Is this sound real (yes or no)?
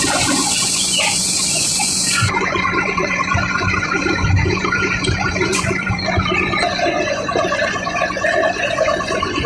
no